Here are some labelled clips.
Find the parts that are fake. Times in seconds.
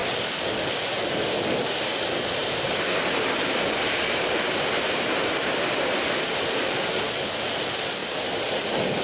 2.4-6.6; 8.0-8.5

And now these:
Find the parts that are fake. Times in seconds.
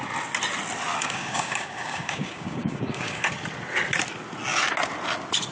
1.0-3.3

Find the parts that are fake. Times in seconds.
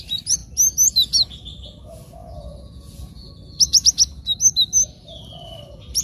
2.2-3.3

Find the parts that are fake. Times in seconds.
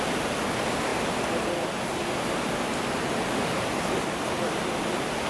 none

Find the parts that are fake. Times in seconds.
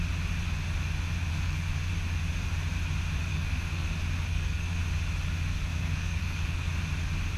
1.3-1.9; 3.3-3.9; 4.3-4.8; 5.5-6.7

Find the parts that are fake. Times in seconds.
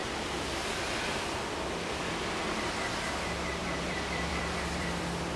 0.0-2.4; 3.6-5.0